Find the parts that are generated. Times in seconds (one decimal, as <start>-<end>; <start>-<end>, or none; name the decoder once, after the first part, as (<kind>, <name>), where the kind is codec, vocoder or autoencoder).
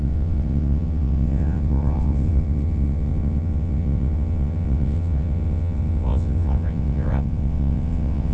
0.0-8.3 (vocoder, WaveNeXt)